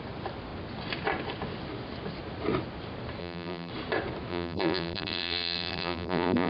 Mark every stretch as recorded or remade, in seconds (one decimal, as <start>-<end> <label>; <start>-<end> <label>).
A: 0.0-3.2 recorded; 3.2-3.7 remade; 3.7-4.3 recorded; 4.3-6.5 remade